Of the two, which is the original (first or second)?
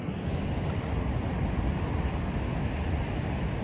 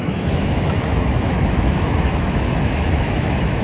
first